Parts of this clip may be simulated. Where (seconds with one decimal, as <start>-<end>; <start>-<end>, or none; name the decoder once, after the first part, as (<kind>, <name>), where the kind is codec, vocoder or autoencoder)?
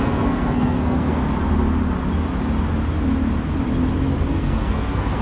0.0-1.2 (codec, SNAC); 4.3-5.2